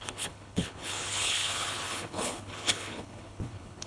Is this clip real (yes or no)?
no